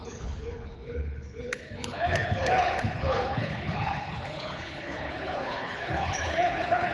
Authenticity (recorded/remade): remade